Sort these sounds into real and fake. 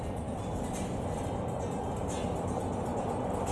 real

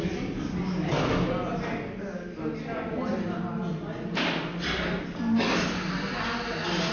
real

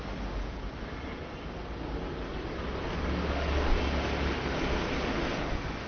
real